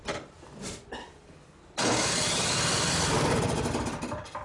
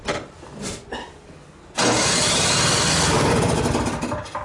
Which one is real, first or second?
second